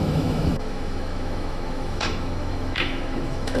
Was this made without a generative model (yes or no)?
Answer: no